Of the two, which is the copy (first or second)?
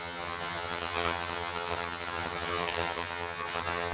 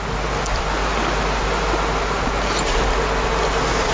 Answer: first